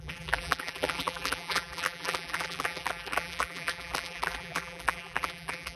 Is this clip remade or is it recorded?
remade